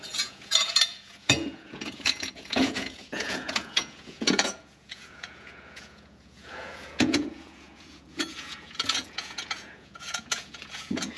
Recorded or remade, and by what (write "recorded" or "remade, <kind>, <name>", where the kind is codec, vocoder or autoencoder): remade, vocoder, Vocos